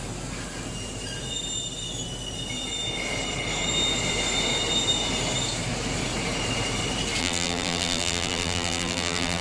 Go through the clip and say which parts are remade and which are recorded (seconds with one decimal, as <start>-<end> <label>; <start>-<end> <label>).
0.0-7.2 recorded; 7.2-9.4 remade